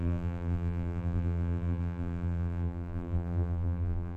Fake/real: fake